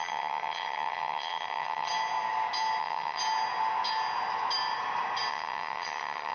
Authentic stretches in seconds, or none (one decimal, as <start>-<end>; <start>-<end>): 1.9-2.8; 3.2-5.3